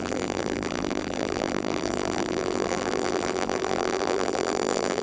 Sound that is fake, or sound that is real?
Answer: fake